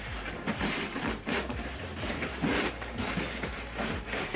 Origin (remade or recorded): remade